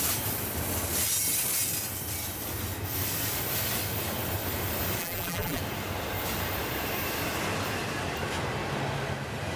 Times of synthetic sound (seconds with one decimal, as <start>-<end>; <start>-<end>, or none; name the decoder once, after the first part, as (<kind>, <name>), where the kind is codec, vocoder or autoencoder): 5.0-5.6 (vocoder, BigVGAN v2)